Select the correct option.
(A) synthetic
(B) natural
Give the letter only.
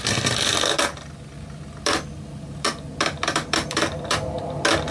B